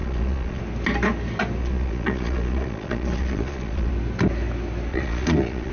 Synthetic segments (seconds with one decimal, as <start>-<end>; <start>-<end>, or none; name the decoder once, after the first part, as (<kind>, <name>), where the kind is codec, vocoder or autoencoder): 0.0-0.6 (vocoder, Vocos); 1.6-3.9; 4.9-5.7